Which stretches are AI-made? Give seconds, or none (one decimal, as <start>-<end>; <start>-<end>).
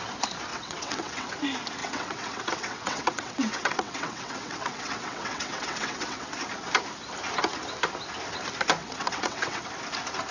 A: 0.5-1.3; 1.8-6.3; 8.8-9.6